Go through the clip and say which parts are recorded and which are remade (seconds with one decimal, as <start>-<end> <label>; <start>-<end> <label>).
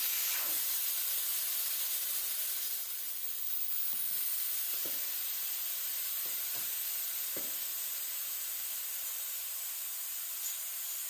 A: 0.0-1.3 remade; 1.3-4.5 recorded; 4.5-11.1 remade